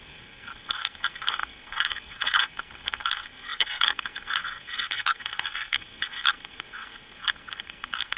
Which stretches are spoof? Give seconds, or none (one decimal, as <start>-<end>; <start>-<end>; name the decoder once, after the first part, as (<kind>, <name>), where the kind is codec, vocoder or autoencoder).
0.0-8.2 (codec, SNAC)